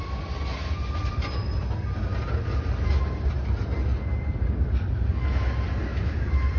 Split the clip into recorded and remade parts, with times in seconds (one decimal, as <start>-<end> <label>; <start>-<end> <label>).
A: 0.0-1.0 recorded; 1.0-1.6 remade; 1.6-6.6 recorded